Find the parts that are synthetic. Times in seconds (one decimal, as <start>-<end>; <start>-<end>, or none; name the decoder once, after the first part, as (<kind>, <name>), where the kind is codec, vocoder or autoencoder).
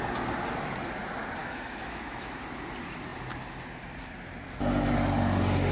1.4-2.4 (autoencoder, DAC-VAE)